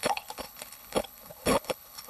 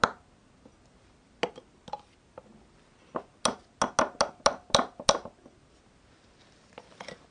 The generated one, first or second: first